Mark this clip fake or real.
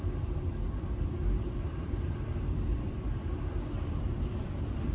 fake